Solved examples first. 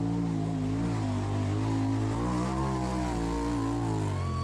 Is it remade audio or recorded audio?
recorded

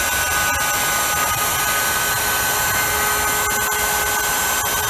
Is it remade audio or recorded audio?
recorded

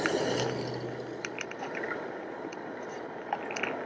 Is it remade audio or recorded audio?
recorded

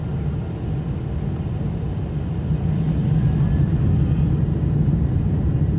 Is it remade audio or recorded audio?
recorded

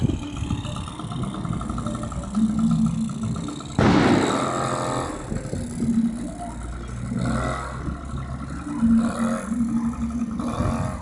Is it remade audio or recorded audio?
recorded